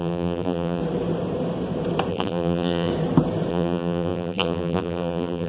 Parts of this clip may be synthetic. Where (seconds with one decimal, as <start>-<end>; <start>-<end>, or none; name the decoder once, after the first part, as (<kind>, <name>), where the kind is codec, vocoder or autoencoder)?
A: 0.0-0.8 (vocoder, BigVGAN v2); 2.1-2.9; 3.5-5.5